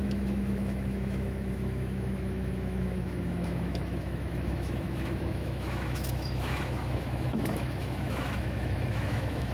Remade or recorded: remade